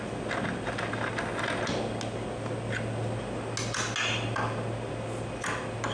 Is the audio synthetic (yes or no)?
no